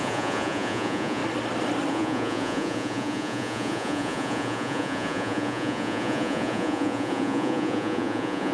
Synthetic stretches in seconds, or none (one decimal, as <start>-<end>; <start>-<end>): 0.0-1.2; 1.9-8.5